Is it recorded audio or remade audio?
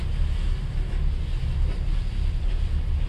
recorded